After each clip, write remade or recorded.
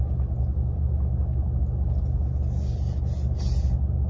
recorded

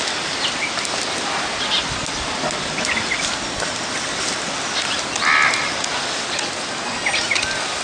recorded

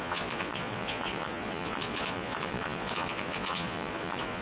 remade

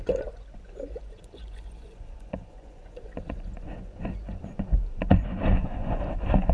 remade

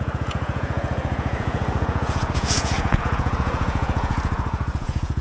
remade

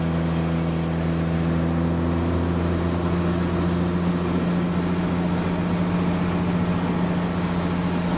recorded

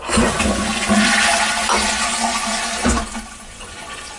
remade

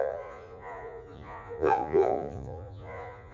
remade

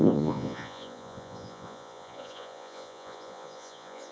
remade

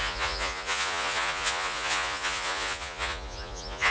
remade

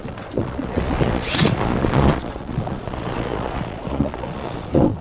remade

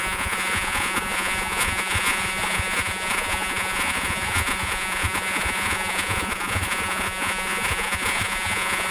remade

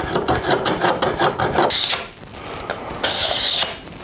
recorded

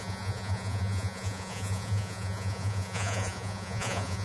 remade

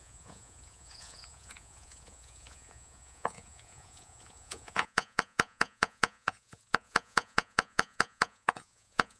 remade